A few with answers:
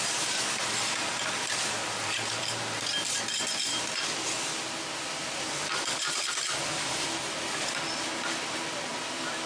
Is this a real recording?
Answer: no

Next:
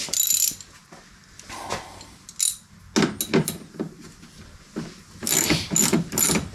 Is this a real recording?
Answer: yes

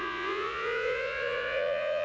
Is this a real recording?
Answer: no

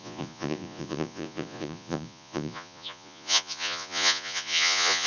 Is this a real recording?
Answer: no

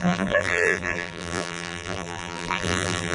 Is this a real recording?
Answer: no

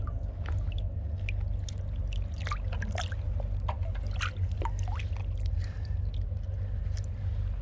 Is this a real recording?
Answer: yes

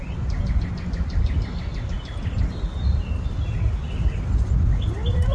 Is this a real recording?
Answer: yes